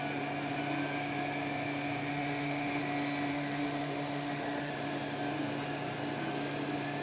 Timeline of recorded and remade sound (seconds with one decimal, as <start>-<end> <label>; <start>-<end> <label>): 0.0-2.1 recorded; 2.1-2.8 remade; 2.8-3.3 recorded; 3.3-4.7 remade; 4.7-7.0 recorded